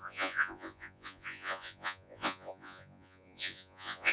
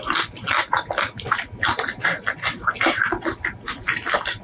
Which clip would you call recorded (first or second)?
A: second